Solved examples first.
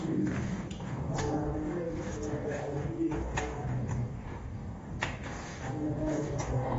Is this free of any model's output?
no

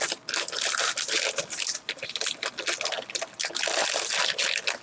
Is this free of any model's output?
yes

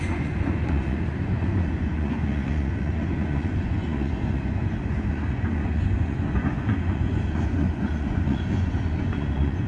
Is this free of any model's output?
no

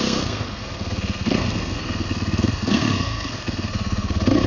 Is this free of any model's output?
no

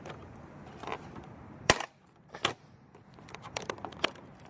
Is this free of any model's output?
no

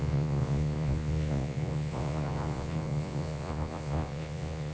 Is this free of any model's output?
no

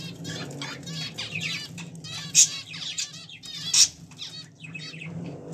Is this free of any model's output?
yes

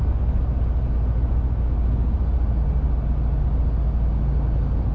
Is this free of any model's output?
yes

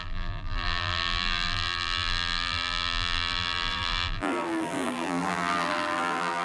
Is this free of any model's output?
no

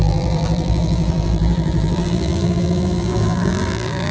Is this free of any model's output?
no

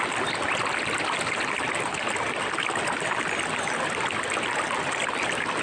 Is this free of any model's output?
yes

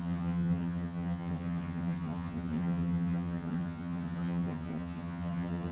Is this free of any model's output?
no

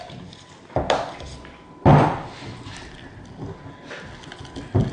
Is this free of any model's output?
yes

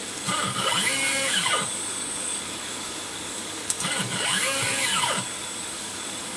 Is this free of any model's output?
no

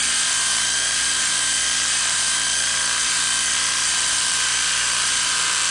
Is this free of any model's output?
no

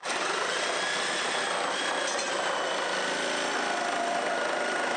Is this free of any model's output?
yes